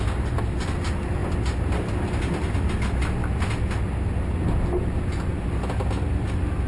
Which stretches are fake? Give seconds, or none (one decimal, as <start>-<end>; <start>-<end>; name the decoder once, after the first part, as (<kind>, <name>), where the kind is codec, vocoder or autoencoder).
none